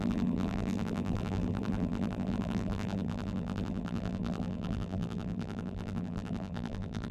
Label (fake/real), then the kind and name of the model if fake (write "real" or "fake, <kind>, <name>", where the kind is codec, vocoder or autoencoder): fake, vocoder, BigVGAN v2